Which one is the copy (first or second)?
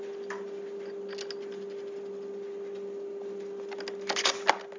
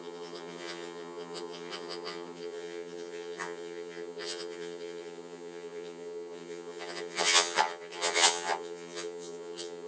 second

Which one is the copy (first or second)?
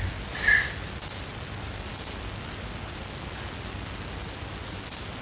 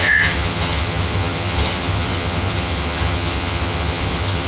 second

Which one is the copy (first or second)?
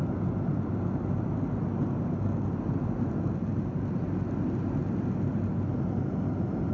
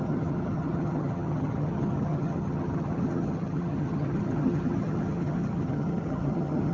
second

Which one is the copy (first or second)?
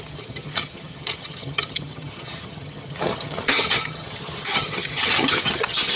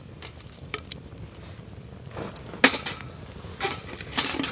first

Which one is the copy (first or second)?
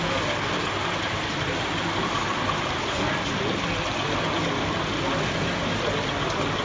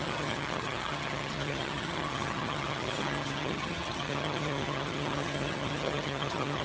second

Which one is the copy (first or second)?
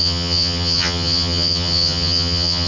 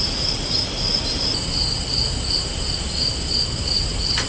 first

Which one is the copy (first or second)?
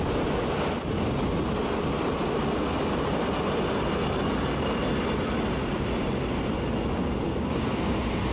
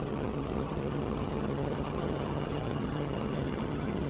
second